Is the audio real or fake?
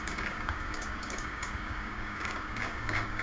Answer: fake